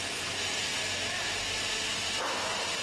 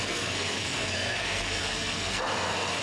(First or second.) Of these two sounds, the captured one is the first